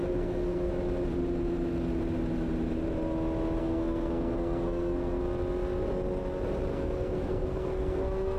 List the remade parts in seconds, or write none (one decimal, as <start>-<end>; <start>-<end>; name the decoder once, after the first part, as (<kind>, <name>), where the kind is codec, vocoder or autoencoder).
0.0-0.7 (codec, SNAC); 3.6-5.2; 6.7-8.4